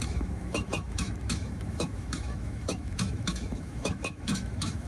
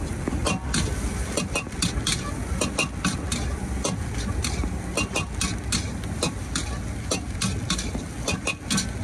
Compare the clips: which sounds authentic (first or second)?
second